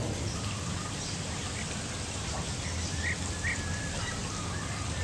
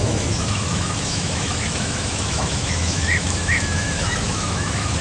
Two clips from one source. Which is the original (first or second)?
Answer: first